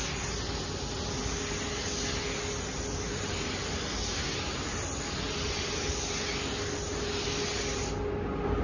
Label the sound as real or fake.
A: real